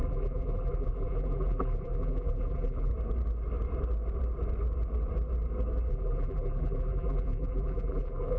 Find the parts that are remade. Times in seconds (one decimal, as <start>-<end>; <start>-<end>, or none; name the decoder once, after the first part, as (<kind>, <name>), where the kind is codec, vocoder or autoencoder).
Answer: 0.0-2.9 (vocoder, BigVGAN v2); 5.9-8.4